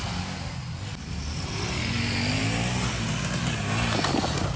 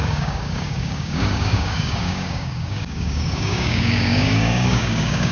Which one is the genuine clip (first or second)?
first